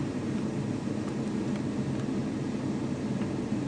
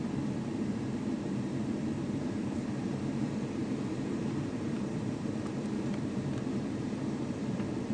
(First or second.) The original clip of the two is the first